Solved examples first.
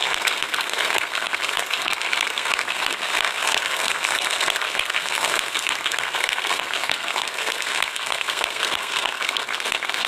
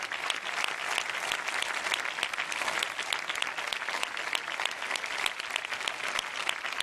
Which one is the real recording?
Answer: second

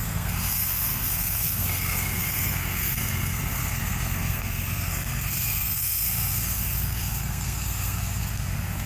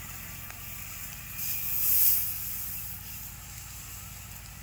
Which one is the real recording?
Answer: second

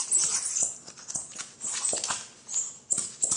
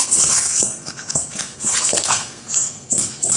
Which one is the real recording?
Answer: first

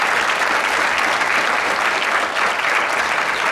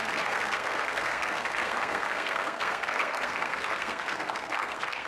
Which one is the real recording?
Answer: first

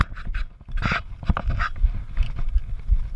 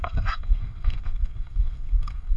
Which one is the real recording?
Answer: first